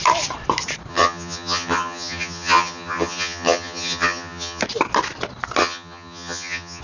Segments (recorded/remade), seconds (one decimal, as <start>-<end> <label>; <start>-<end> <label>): 0.0-0.9 recorded; 0.9-4.6 remade; 4.6-5.6 recorded; 5.6-6.8 remade